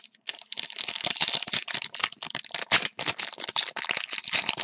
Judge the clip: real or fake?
real